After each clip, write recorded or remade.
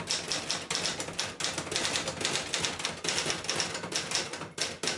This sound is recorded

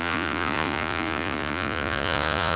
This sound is remade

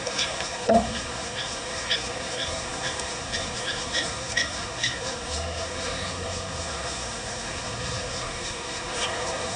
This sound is remade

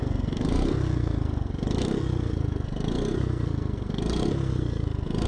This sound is remade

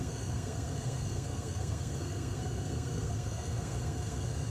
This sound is remade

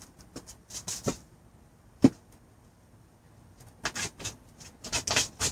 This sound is recorded